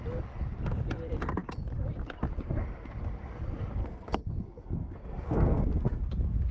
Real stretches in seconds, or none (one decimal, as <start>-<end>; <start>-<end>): 0.0-3.8; 6.1-6.5